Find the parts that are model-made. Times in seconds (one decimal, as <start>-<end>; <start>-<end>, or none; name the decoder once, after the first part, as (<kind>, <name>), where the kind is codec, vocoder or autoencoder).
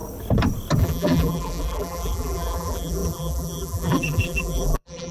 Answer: 0.8-5.1 (vocoder, BigVGAN v2)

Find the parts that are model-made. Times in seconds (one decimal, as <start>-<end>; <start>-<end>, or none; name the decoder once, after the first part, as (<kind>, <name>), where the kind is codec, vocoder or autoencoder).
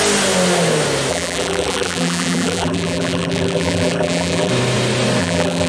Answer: 1.1-4.5 (vocoder, BigVGAN v2); 5.2-5.7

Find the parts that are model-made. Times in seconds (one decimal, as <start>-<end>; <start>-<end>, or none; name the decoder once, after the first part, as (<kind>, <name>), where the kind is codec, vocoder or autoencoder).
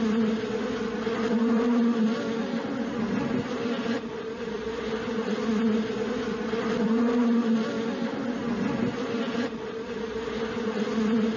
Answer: 0.0-11.4 (vocoder, BigVGAN v2)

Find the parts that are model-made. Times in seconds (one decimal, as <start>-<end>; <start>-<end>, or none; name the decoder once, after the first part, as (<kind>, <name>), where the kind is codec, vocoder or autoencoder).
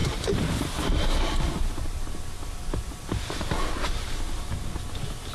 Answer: 0.0-3.2 (vocoder, BigVGAN v2)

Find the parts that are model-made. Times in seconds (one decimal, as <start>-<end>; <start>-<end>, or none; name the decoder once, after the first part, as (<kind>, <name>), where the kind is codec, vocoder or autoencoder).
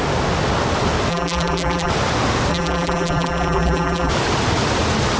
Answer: 1.1-1.9 (vocoder, BigVGAN v2); 2.5-4.1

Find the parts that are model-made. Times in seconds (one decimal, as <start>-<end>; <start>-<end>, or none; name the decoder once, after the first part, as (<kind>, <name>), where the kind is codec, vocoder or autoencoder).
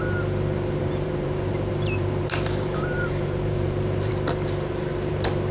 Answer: 0.8-4.1 (vocoder, BigVGAN v2)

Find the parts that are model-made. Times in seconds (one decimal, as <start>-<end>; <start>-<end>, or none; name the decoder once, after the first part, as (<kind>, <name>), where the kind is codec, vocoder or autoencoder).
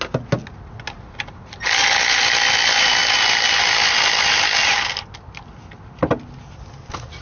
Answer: none